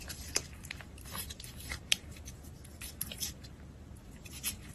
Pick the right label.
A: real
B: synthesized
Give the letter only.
B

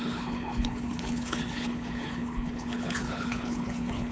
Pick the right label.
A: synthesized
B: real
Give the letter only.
A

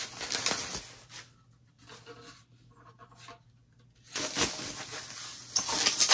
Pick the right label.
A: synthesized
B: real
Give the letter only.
B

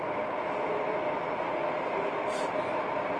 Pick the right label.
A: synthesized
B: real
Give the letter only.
B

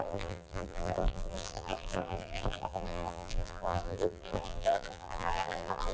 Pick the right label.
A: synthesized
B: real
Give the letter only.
A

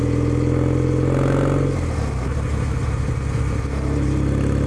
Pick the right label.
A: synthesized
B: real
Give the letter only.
B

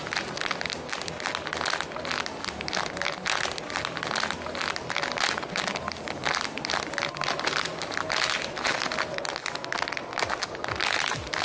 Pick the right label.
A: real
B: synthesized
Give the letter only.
A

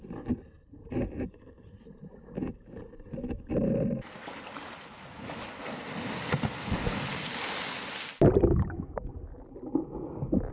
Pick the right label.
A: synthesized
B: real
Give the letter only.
B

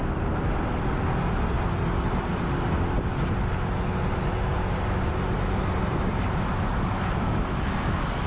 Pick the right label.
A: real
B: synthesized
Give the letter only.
A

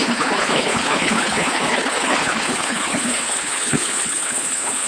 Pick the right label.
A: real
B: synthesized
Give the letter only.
B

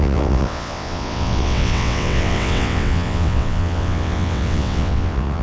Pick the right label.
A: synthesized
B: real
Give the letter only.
A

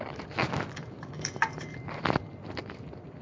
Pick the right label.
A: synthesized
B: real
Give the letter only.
A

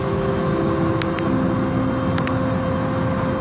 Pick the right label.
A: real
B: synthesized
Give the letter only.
A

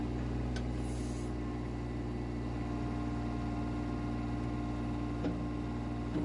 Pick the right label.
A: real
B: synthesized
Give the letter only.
A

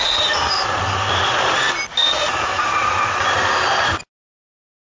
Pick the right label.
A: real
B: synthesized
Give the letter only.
A